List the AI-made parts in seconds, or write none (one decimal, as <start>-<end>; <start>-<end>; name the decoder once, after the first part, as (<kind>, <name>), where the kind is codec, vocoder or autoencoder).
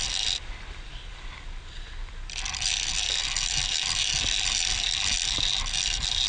none